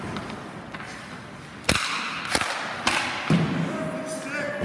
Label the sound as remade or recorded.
recorded